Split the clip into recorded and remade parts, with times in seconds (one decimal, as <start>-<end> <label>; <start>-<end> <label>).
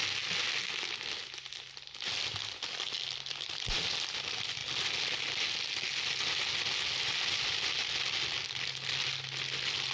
0.0-9.9 recorded